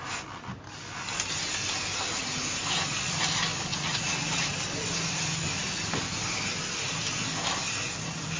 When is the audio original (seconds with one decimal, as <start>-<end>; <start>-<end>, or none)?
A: 0.0-3.7; 4.4-8.4